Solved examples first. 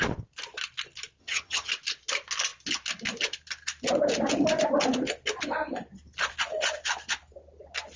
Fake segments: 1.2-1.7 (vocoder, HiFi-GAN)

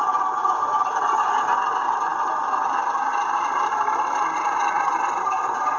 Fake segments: none